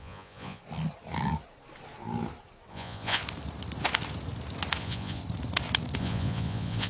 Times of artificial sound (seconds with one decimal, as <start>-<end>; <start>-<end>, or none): 0.0-0.6; 2.7-3.2; 4.8-5.2; 6.0-6.9

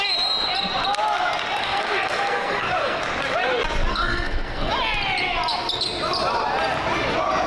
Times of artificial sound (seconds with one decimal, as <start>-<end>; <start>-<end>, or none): 1.6-3.0; 3.9-4.7